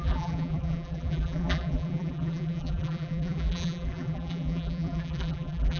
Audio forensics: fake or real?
fake